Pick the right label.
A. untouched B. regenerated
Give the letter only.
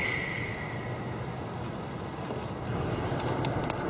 A